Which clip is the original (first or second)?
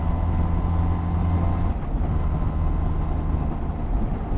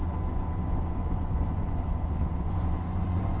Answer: first